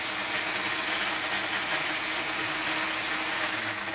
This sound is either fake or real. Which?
real